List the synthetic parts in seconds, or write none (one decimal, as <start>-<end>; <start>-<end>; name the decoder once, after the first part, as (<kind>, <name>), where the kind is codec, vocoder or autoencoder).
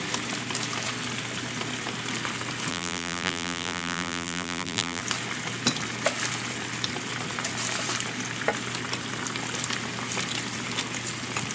2.7-5.0 (vocoder, BigVGAN v2)